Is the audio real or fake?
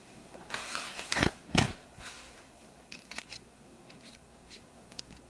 fake